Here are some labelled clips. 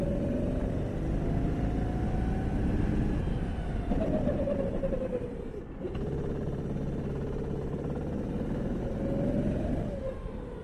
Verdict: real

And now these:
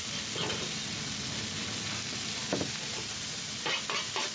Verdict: real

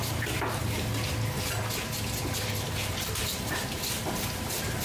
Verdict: real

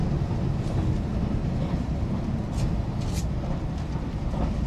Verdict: real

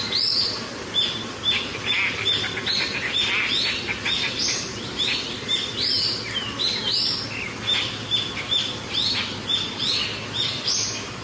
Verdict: fake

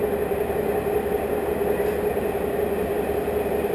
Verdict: real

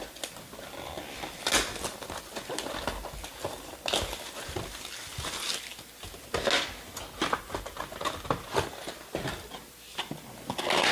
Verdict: real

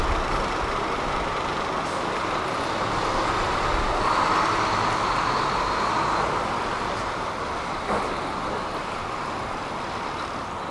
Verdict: real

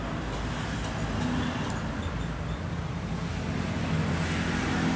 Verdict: real